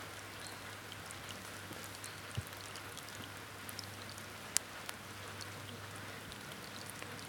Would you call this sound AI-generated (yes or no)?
no